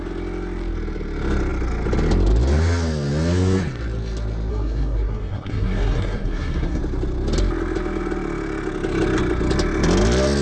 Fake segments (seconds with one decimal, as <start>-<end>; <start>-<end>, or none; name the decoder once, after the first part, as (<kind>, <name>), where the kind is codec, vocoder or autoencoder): 4.5-6.8 (codec, SNAC)